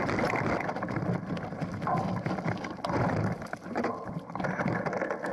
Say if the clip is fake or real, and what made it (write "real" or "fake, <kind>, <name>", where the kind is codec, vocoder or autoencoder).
real